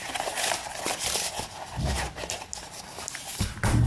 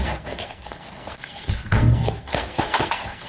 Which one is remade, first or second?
second